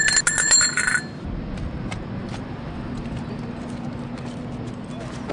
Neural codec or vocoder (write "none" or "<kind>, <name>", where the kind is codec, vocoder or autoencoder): none